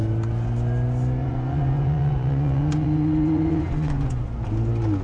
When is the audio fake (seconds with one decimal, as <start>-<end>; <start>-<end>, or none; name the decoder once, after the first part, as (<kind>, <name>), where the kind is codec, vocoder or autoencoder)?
1.2-4.2 (vocoder, Vocos)